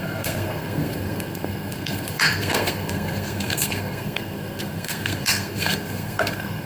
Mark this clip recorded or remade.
remade